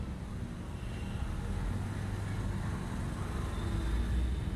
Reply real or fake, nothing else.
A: real